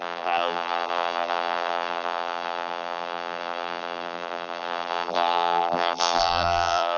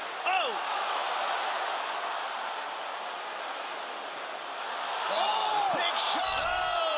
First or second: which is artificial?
first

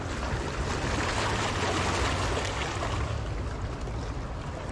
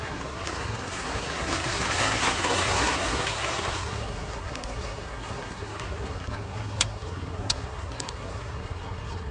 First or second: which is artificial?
second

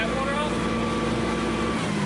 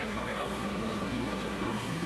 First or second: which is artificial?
second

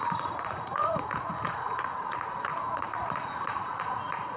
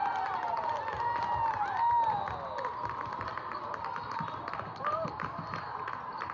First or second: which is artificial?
first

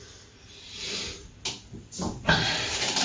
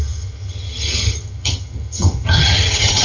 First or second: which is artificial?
second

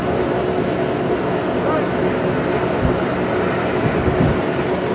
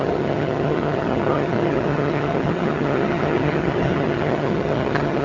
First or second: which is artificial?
second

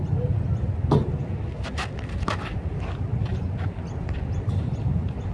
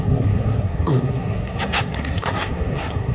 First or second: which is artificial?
second